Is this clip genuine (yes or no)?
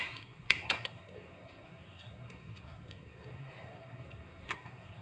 no